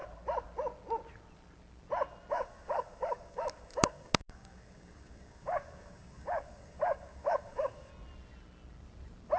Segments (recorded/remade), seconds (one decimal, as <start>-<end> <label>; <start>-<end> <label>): 0.0-2.3 recorded; 2.3-7.9 remade; 7.9-9.4 recorded